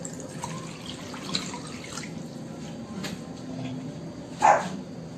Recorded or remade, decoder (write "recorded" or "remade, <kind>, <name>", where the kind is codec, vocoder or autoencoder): recorded